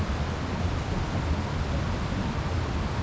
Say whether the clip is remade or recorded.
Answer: recorded